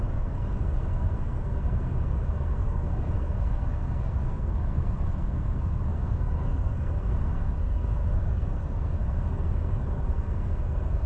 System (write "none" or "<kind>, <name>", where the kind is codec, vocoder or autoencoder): codec, SNAC